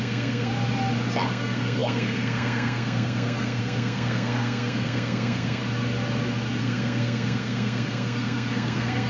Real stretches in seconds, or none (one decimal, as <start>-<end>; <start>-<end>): 0.5-1.3; 5.6-6.6